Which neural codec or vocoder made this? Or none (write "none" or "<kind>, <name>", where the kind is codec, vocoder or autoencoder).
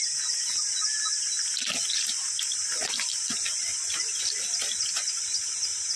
none